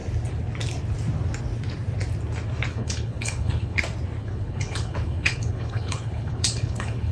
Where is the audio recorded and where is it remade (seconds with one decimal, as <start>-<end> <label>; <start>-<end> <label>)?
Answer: 0.0-2.7 recorded; 2.7-3.8 remade; 3.8-4.2 recorded; 4.2-7.1 remade